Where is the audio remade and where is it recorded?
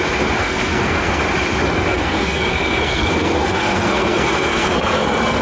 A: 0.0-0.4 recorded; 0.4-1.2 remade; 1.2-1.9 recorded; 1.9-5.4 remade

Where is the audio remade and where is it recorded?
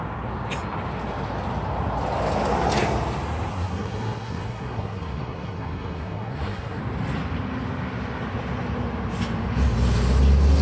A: 0.0-3.5 recorded; 3.5-6.8 remade; 6.8-10.6 recorded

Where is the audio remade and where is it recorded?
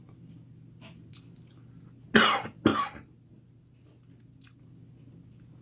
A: 0.0-5.6 recorded